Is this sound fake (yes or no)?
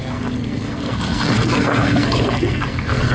yes